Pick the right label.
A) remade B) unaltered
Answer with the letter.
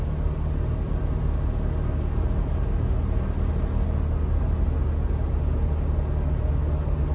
B